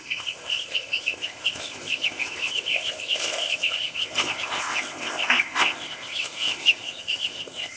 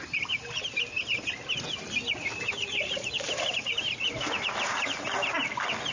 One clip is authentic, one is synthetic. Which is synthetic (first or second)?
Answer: first